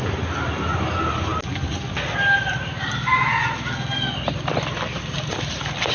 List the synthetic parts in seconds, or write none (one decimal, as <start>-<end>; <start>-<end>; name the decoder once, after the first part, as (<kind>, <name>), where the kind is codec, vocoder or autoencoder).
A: none